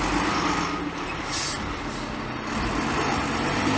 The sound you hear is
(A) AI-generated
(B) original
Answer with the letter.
B